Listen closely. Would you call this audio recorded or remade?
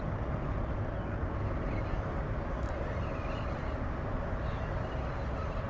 recorded